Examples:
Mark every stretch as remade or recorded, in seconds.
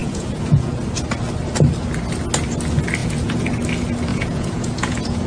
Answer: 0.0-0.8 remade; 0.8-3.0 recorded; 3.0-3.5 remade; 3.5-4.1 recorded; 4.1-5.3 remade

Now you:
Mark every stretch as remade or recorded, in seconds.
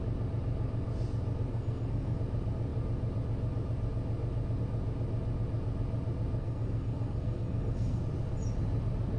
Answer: 0.0-1.5 recorded; 1.5-2.2 remade; 2.2-6.4 recorded; 6.4-8.0 remade; 8.0-9.2 recorded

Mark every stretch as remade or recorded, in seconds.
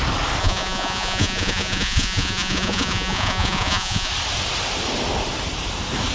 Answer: 0.0-0.4 recorded; 0.4-4.1 remade; 4.1-6.1 recorded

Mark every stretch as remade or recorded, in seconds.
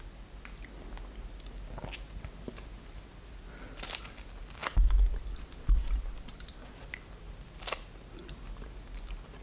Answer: 0.0-9.4 recorded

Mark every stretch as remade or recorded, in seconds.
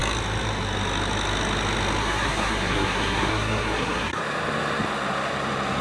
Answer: 0.0-2.0 recorded; 2.0-4.2 remade; 4.2-5.8 recorded